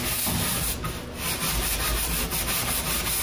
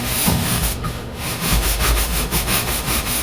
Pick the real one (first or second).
first